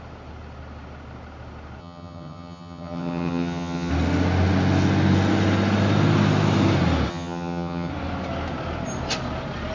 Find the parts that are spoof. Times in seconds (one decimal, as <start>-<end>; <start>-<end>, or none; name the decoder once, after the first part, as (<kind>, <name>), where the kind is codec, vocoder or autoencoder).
1.8-3.9 (vocoder, HiFi-GAN); 7.1-7.9